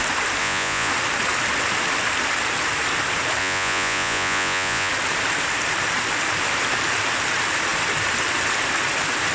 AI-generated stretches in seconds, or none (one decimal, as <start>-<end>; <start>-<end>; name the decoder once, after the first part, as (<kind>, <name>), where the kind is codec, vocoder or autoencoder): 0.4-0.9 (vocoder, Vocos); 3.4-4.9